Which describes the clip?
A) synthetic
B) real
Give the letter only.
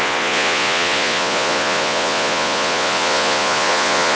A